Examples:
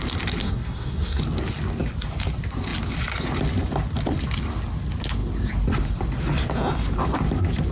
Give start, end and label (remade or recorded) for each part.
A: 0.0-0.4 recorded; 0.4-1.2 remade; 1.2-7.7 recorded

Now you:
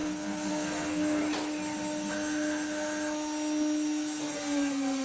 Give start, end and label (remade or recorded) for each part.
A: 0.0-1.2 remade; 1.2-4.2 recorded; 4.2-5.0 remade

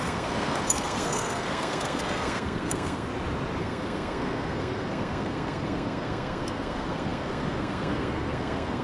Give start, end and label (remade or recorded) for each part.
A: 0.0-3.1 remade; 3.1-3.6 recorded; 3.6-8.8 remade

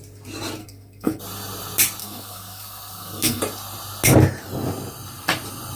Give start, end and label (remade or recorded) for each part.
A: 0.0-0.6 recorded; 0.6-1.2 remade; 1.2-2.0 recorded; 2.0-3.4 remade; 3.4-5.8 recorded